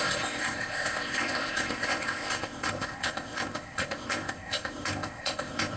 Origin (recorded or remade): remade